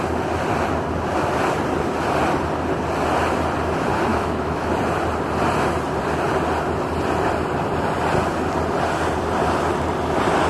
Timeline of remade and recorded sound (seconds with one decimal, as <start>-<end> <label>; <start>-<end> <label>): 0.0-4.1 recorded; 4.1-4.7 remade; 4.7-10.5 recorded